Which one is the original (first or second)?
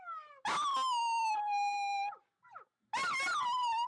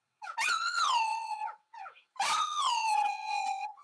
first